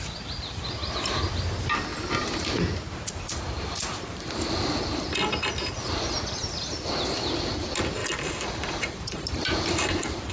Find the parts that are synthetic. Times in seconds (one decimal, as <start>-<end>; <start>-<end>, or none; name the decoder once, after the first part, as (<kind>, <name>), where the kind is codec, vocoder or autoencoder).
8.0-9.5 (vocoder, BigVGAN v2)